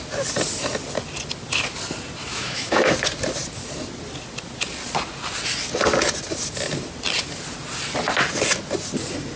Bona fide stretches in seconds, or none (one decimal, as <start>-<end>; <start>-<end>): 0.0-2.2; 2.9-9.4